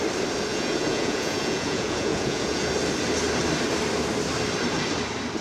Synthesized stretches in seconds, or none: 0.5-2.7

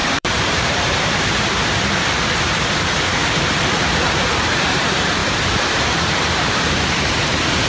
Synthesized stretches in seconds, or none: 0.0-1.1; 3.2-4.4; 5.2-7.7